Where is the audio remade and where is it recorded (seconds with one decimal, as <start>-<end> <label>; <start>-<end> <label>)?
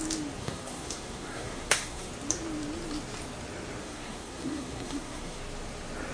0.0-0.4 recorded; 0.4-2.1 remade; 2.1-3.8 recorded; 3.8-5.4 remade; 5.4-6.1 recorded